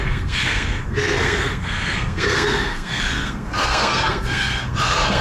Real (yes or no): no